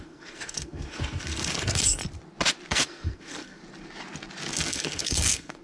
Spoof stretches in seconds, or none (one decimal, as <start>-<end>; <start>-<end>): 0.0-2.0; 2.7-3.6; 4.5-5.6